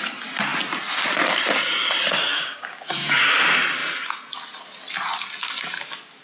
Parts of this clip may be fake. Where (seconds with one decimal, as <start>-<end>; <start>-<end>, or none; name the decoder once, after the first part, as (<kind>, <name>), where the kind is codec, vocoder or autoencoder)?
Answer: 2.3-3.2 (codec, DAC)